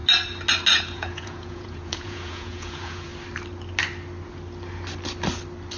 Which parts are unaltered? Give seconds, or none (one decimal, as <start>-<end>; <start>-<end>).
0.0-0.8; 3.1-5.8